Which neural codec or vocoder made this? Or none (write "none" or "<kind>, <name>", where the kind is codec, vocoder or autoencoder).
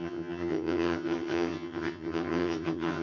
vocoder, HiFi-GAN